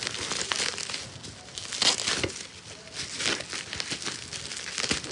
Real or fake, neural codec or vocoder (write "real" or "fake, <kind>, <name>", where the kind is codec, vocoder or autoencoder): real